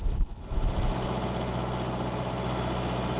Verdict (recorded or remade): recorded